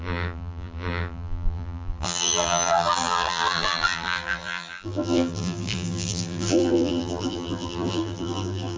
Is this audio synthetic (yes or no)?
yes